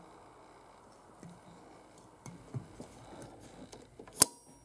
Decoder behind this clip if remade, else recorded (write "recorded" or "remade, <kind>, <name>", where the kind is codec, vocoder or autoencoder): recorded